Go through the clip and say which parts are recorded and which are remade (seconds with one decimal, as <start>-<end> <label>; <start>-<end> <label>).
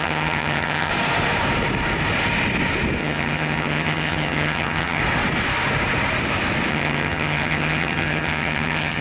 0.0-0.9 remade; 0.9-3.0 recorded; 3.0-5.0 remade; 5.0-6.7 recorded; 6.7-9.0 remade